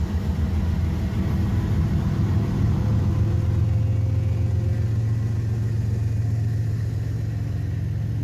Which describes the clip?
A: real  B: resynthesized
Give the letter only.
A